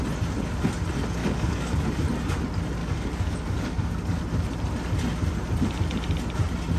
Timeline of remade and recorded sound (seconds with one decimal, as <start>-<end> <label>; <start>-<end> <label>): 0.0-1.2 recorded; 1.2-1.9 remade; 1.9-2.8 recorded; 2.8-4.2 remade; 4.2-6.8 recorded